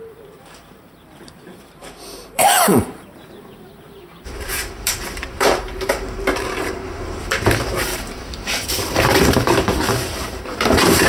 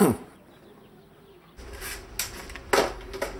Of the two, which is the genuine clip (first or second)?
second